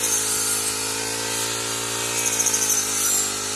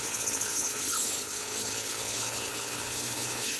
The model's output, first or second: second